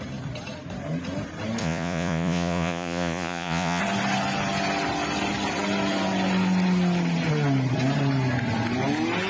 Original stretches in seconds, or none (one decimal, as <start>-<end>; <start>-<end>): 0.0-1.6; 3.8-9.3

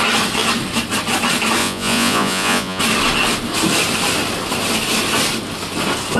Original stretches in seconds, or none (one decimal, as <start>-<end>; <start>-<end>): 0.0-1.6; 2.8-6.2

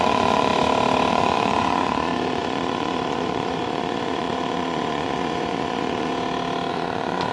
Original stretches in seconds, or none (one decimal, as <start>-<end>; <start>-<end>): 0.5-1.1; 6.1-6.7

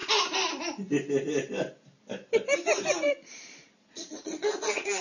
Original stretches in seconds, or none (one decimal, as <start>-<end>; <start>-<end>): 0.0-3.0

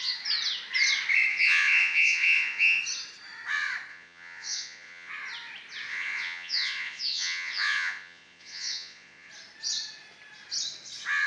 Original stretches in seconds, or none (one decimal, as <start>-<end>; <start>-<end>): 0.0-1.3; 2.8-3.9; 5.1-5.9; 9.3-11.3

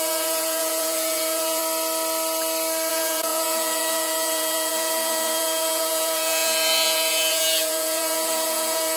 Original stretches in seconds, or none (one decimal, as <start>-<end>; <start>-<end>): 1.6-2.9

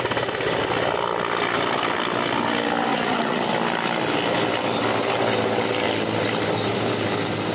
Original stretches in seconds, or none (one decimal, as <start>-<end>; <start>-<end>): 0.0-2.9; 3.4-7.5